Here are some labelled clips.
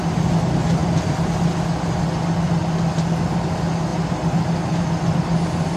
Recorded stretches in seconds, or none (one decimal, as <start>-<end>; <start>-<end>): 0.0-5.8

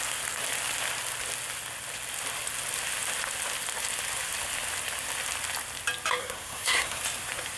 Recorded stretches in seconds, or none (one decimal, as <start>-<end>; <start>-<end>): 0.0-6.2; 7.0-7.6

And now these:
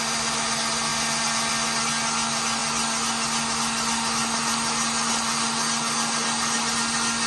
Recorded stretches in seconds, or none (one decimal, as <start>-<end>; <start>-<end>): 0.0-7.3

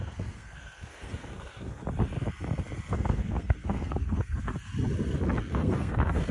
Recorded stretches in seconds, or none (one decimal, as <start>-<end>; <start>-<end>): 1.8-2.9; 4.7-5.4